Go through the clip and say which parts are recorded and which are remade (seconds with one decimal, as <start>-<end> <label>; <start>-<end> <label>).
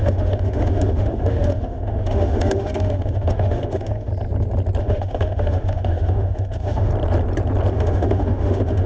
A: 0.0-4.1 remade; 4.1-4.8 recorded; 4.8-6.9 remade; 6.9-7.7 recorded; 7.7-8.9 remade